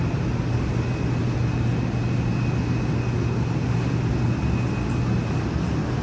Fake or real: real